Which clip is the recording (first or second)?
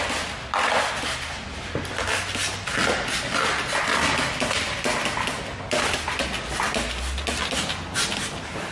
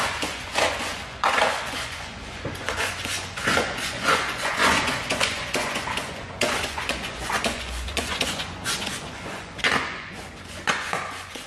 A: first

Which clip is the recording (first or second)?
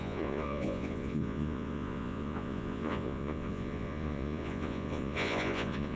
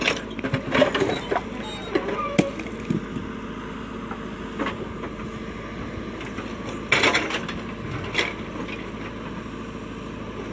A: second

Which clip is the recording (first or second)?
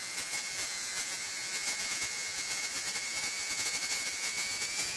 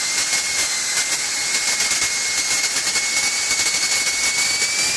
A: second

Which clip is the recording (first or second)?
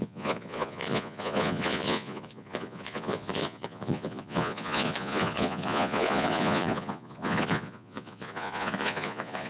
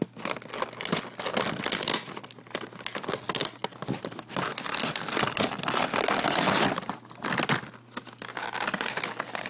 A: second